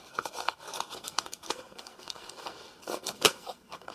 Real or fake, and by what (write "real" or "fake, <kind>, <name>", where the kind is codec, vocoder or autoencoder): fake, codec, SNAC